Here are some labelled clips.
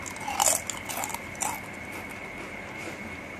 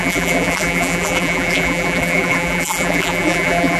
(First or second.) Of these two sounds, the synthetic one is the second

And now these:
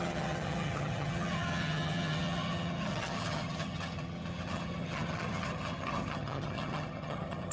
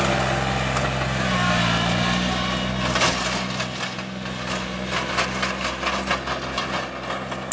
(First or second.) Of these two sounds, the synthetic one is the first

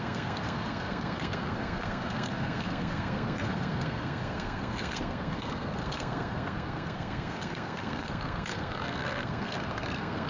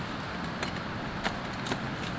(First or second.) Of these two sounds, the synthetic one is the first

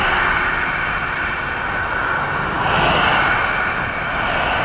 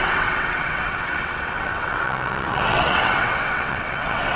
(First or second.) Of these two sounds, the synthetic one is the second